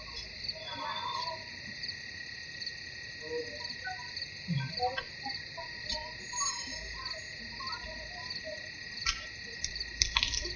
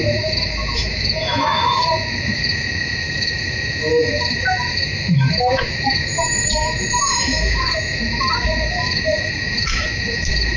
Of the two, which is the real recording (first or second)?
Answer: first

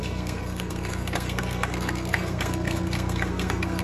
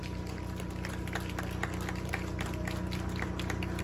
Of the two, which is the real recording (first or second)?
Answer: second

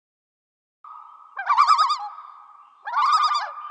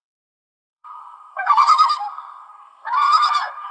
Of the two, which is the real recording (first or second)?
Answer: first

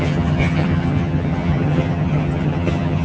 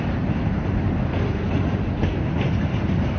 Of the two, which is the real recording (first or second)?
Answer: second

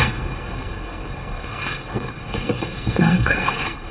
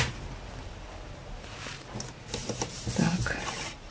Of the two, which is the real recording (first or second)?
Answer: second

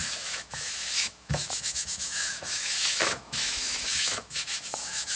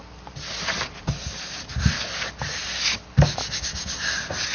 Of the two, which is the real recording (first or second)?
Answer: second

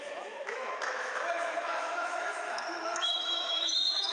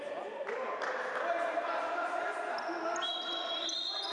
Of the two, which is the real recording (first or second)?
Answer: second